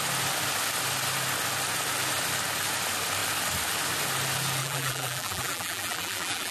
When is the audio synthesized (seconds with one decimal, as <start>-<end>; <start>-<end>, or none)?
4.6-6.5